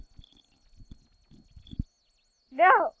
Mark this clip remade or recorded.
recorded